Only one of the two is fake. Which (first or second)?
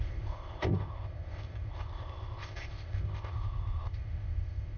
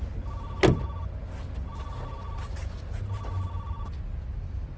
first